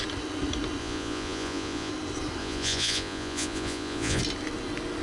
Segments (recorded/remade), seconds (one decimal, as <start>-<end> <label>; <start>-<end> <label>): 0.0-0.8 recorded; 0.8-1.9 remade; 1.9-2.4 recorded; 2.4-4.2 remade; 4.2-5.0 recorded